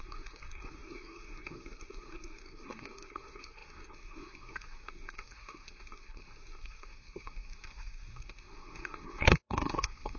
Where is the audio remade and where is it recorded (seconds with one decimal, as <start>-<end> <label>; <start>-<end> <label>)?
0.0-10.2 remade